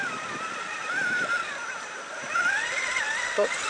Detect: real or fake real